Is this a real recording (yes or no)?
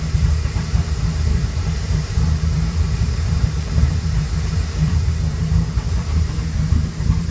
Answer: no